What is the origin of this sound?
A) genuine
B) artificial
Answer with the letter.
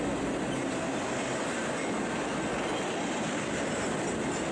A